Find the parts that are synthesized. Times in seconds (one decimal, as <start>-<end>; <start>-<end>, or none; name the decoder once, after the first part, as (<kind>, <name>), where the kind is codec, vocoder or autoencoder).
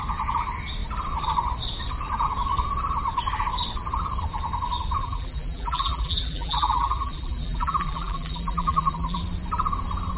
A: 5.0-9.2 (vocoder, BigVGAN v2)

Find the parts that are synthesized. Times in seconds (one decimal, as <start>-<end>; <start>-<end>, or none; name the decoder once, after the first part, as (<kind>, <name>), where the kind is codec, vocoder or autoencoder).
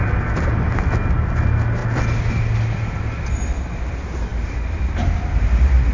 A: 1.8-3.0 (vocoder, BigVGAN v2); 4.3-5.4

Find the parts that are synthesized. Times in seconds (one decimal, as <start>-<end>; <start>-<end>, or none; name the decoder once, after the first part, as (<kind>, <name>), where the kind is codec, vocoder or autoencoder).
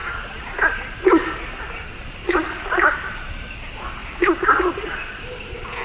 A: 0.0-0.6 (vocoder, BigVGAN v2); 1.8-3.5